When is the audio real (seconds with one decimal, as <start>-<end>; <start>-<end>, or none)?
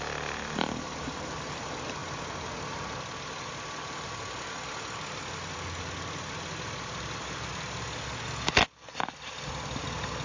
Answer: 0.0-10.2